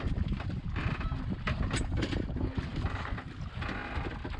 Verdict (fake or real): real